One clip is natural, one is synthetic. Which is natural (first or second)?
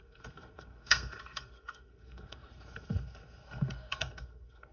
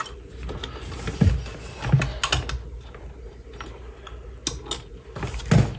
second